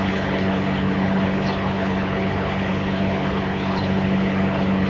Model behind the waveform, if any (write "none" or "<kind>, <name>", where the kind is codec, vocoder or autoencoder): codec, HILCodec